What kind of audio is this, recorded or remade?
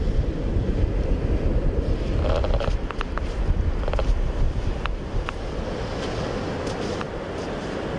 recorded